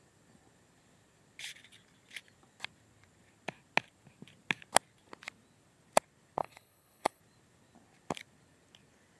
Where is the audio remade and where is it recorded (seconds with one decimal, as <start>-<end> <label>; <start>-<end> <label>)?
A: 0.0-6.4 recorded; 6.4-7.2 remade; 7.2-9.2 recorded